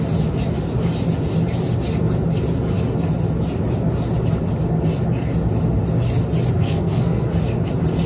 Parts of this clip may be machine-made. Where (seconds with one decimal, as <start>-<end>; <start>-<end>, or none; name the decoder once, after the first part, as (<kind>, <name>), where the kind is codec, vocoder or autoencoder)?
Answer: 6.6-7.3 (codec, SNAC)